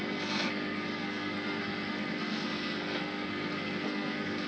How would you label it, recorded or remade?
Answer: remade